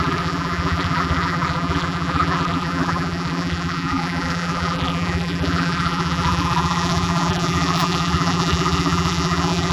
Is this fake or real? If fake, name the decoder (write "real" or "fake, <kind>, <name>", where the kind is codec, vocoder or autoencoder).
fake, vocoder, BigVGAN v2